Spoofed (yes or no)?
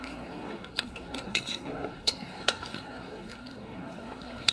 yes